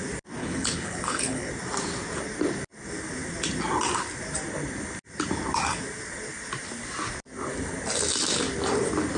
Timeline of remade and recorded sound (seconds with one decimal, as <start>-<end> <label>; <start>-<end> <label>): 0.0-0.4 recorded; 0.4-1.5 remade; 1.5-9.2 recorded